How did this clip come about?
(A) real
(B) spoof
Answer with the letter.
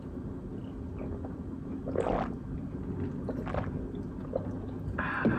A